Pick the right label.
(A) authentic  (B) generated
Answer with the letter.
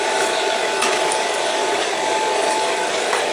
B